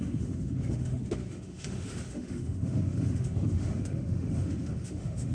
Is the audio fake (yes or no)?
yes